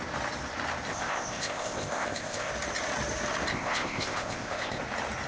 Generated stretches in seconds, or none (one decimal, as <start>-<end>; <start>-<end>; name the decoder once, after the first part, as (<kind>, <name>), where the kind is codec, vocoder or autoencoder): 0.9-2.5 (codec, ZipCodec); 3.5-4.8